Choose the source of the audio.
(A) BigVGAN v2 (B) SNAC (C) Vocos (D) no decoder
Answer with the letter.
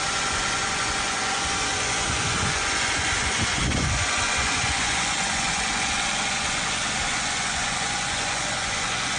C